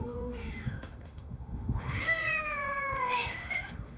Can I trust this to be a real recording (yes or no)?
no